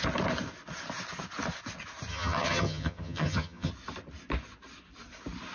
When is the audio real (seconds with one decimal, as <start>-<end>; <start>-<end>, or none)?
0.0-2.1; 3.7-5.5